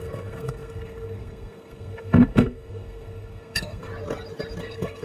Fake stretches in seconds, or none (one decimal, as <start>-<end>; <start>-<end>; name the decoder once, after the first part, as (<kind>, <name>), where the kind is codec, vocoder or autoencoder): 0.0-3.9 (codec, SNAC); 4.6-5.0